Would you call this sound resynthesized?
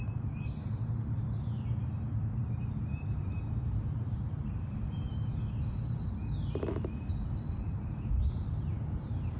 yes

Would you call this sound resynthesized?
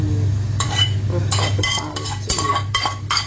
yes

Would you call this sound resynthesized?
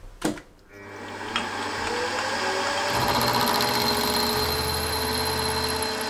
no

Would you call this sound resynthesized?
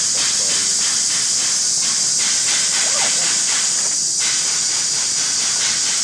no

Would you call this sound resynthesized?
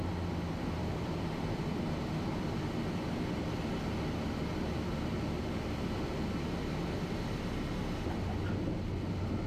no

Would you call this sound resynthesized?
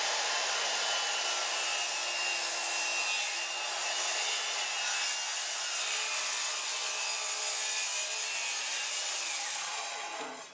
no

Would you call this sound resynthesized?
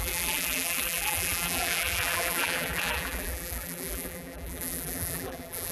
yes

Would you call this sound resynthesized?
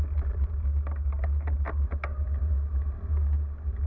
no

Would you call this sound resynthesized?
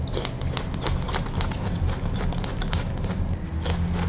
no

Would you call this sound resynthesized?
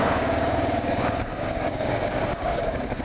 yes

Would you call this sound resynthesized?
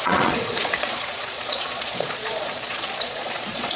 yes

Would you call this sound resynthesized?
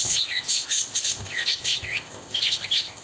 yes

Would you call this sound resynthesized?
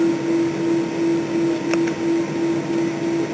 no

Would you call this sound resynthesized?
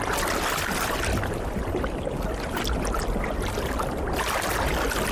no